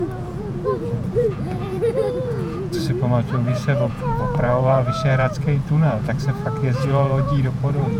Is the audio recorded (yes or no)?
no